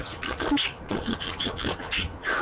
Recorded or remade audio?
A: remade